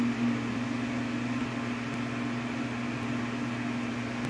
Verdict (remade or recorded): recorded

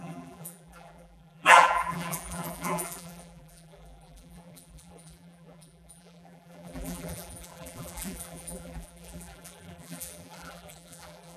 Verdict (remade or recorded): remade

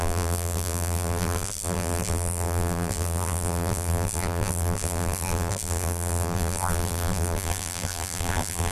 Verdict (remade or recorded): remade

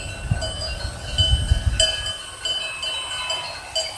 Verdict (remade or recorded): recorded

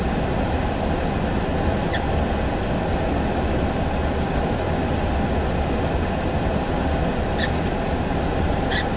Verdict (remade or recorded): recorded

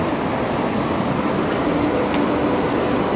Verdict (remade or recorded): recorded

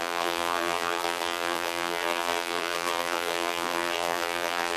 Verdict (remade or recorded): remade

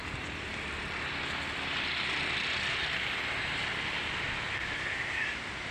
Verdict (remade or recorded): recorded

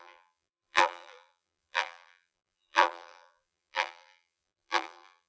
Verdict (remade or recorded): remade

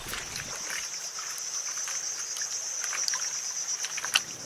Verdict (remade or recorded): recorded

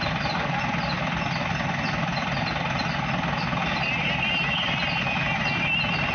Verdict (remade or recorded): recorded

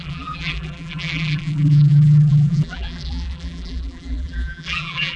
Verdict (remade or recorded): remade